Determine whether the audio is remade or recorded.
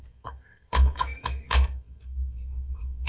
remade